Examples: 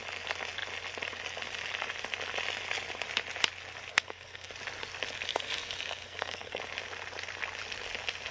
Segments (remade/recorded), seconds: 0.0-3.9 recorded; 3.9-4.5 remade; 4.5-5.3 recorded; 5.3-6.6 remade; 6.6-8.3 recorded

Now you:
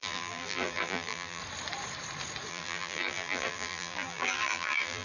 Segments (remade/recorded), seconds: 0.0-1.4 remade; 1.4-2.5 recorded; 2.5-5.0 remade

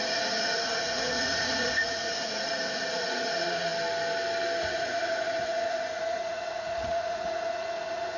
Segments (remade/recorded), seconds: 0.0-3.7 remade; 3.7-4.6 recorded; 4.6-8.2 remade

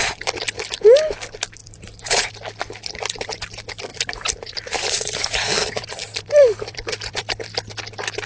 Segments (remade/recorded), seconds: 0.0-1.6 recorded; 1.6-2.3 remade; 2.3-3.9 recorded; 3.9-7.7 remade; 7.7-8.3 recorded

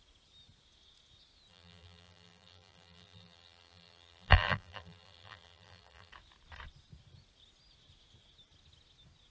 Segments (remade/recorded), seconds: 0.0-1.5 recorded; 1.5-6.1 remade; 6.1-9.3 recorded

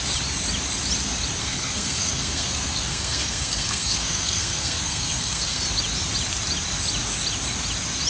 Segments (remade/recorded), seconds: 0.0-1.4 recorded; 1.4-5.6 remade; 5.6-8.1 recorded